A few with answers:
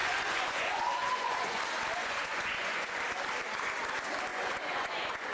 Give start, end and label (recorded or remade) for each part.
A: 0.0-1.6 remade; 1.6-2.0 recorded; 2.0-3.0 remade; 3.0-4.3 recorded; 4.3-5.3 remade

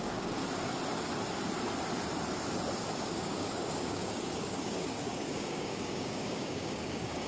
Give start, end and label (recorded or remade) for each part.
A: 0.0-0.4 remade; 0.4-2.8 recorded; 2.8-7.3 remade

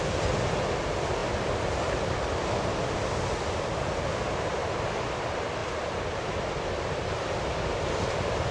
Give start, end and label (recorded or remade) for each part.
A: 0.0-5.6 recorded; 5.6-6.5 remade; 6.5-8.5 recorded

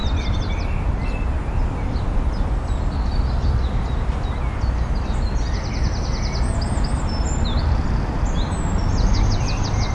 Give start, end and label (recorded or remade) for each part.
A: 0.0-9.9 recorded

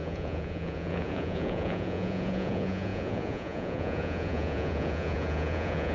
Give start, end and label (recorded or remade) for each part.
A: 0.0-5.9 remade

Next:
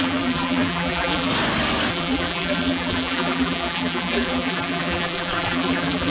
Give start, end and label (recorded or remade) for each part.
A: 0.0-1.3 remade; 1.3-1.9 recorded; 1.9-6.1 remade

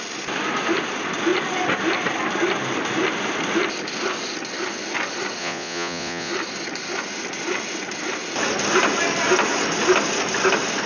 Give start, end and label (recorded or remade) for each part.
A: 0.0-5.4 recorded; 5.4-6.3 remade; 6.3-10.9 recorded

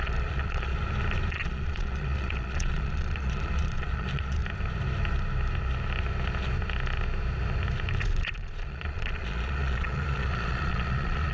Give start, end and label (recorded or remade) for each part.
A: 0.0-0.7 remade; 0.7-1.3 recorded; 1.3-4.4 remade; 4.4-8.0 recorded; 8.0-11.3 remade